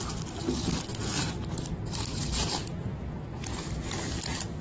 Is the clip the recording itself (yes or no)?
yes